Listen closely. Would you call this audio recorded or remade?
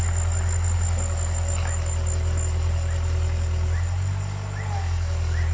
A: recorded